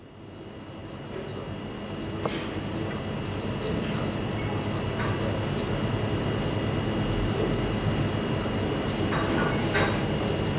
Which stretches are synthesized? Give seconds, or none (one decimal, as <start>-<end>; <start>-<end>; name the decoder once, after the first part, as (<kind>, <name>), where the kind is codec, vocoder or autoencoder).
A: none